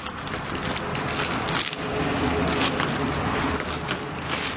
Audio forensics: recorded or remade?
recorded